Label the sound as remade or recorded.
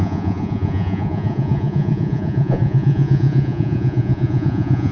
remade